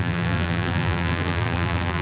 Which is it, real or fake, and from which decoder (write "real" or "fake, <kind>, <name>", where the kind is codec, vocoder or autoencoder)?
fake, vocoder, BigVGAN v2